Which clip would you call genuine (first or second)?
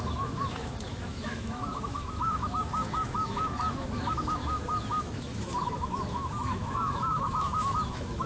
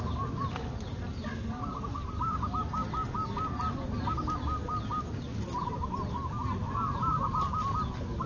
second